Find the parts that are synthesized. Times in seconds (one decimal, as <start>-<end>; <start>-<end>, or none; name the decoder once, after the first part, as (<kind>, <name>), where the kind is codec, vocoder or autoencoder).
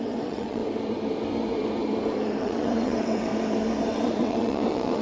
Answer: 0.0-0.6 (vocoder, WaveNeXt); 2.4-3.3; 3.9-5.0